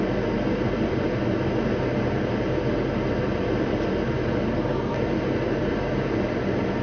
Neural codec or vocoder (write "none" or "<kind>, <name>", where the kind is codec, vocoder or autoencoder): none